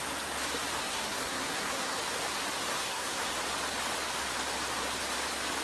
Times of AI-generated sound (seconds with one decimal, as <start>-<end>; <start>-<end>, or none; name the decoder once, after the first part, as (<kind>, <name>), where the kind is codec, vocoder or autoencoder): 0.8-2.0 (codec, SNAC); 2.7-3.3